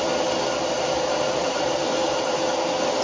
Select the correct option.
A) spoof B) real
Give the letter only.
B